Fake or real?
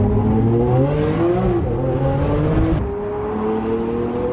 real